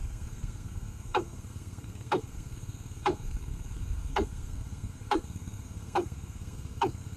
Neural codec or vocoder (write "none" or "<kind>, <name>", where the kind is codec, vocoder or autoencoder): codec, SNAC